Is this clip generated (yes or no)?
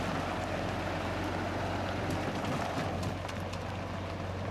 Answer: no